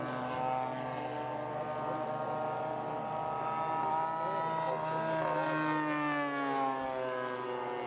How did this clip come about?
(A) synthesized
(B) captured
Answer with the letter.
B